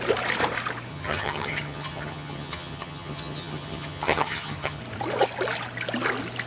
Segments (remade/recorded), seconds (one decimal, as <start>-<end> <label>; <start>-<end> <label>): 0.0-0.9 recorded; 0.9-4.8 remade; 4.8-6.5 recorded